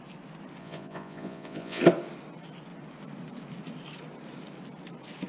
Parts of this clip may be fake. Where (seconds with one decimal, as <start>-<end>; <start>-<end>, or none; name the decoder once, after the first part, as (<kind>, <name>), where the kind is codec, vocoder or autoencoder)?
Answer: 0.6-1.8 (vocoder, Vocos)